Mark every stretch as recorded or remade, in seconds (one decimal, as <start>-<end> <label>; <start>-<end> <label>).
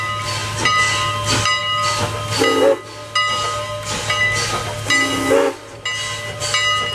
0.0-6.9 recorded